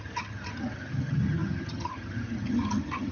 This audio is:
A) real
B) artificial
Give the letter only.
B